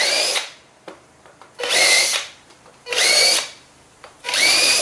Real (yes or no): no